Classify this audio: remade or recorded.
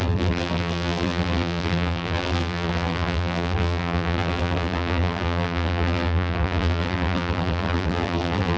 remade